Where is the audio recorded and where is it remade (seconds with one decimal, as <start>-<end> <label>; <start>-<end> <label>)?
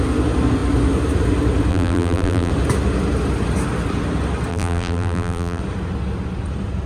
0.0-1.7 recorded; 1.7-2.5 remade; 2.5-4.5 recorded; 4.5-5.6 remade; 5.6-6.9 recorded